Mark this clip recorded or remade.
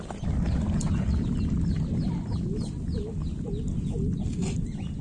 recorded